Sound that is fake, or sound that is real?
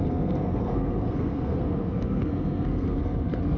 fake